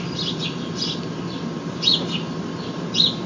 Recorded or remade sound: recorded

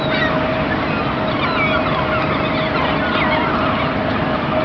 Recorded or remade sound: recorded